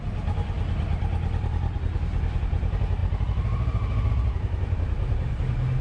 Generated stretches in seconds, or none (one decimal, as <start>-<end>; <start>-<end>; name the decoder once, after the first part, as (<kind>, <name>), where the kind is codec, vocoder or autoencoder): none